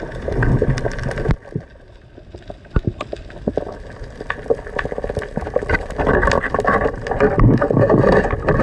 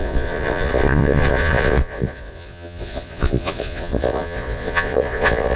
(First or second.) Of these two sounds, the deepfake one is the second